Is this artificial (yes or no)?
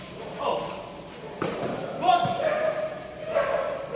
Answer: no